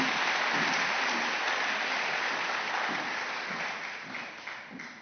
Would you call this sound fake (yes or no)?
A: no